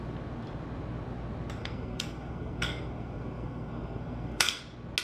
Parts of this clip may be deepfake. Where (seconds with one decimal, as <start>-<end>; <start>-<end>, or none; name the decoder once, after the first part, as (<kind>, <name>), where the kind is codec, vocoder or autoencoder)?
1.6-4.6 (codec, SNAC)